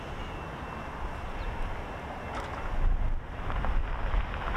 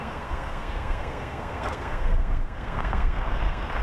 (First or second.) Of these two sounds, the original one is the first